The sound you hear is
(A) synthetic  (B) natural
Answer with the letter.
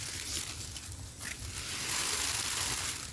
B